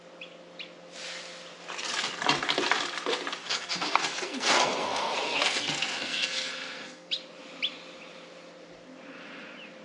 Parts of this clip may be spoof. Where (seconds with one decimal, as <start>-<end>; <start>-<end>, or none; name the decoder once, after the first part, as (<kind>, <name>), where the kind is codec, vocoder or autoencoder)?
3.4-7.1 (codec, SNAC)